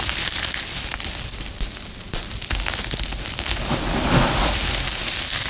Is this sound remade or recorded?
recorded